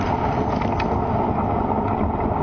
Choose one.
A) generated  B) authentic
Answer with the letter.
B